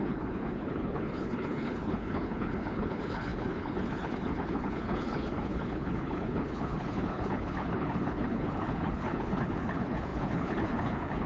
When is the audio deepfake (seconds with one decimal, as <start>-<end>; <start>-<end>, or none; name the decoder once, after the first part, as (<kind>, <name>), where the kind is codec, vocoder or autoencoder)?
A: 0.0-11.3 (codec, HILCodec)